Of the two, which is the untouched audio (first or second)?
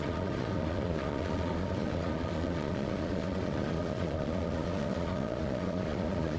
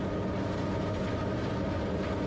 second